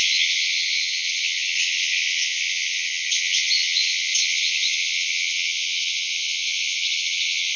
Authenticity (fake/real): fake